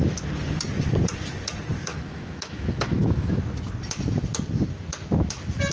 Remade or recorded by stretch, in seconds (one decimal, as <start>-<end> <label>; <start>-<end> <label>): 0.0-1.9 recorded; 1.9-3.4 remade; 3.4-5.7 recorded